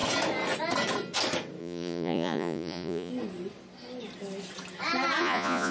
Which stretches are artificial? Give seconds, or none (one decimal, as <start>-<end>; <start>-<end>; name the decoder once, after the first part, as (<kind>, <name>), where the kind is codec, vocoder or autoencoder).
1.6-3.1 (vocoder, Vocos); 5.2-5.7